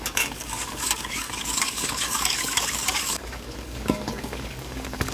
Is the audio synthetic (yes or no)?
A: yes